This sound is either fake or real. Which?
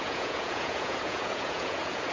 fake